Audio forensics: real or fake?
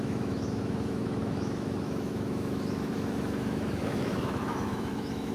fake